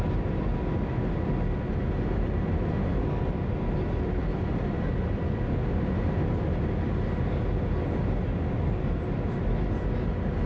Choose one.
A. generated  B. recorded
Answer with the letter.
B